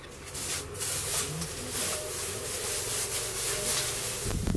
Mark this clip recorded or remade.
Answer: recorded